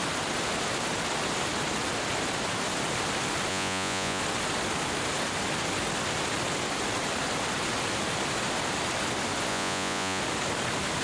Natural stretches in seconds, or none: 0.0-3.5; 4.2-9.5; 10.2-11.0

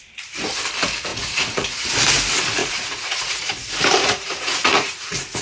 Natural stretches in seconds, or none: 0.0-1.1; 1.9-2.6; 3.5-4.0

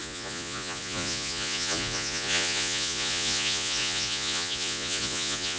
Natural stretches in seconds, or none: none

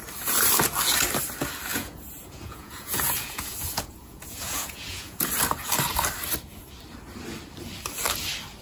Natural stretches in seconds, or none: 0.0-1.7; 5.2-8.6

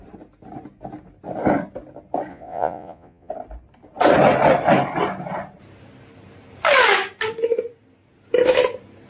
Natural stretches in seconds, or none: 0.0-2.3; 3.3-9.1

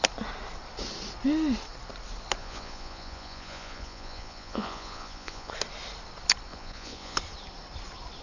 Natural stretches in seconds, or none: 0.0-2.4; 5.5-6.5; 7.2-8.2